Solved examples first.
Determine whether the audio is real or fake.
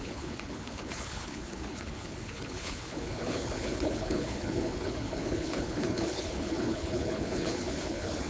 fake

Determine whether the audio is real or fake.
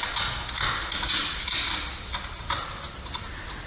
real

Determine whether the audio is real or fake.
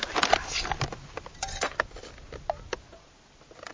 real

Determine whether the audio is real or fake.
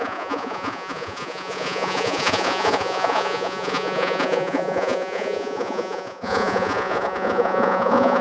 fake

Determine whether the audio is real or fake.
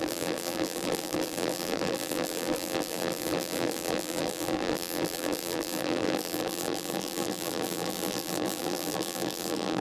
fake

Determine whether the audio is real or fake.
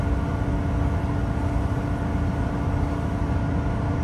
real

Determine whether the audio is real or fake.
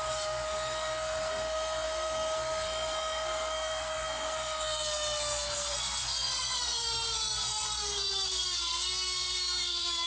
fake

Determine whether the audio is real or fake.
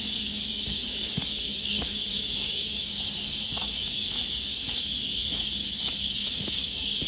fake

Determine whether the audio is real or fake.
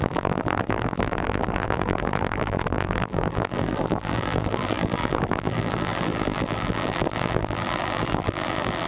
fake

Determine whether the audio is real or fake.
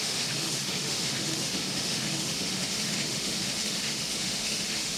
fake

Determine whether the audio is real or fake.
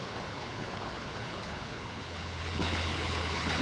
fake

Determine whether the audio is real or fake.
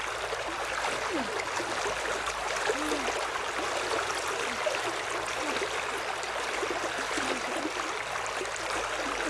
real